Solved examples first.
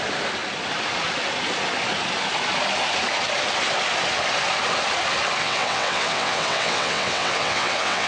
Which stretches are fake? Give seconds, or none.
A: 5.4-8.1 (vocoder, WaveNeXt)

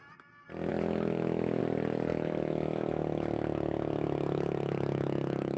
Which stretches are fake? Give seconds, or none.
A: 0.7-1.6 (autoencoder, DAC-VAE); 2.1-5.6

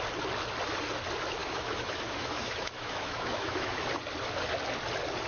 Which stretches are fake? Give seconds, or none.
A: 1.4-3.8 (autoencoder, DAC-VAE)